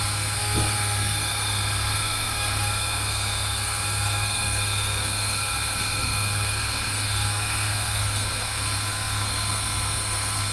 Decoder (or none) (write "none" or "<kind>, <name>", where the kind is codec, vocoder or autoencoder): codec, SNAC